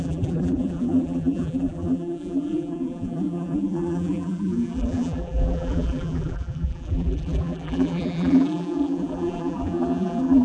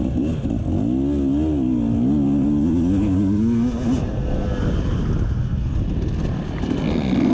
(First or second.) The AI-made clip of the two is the first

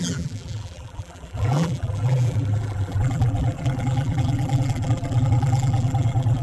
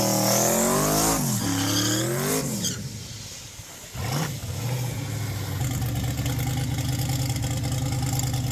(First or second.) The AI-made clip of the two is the first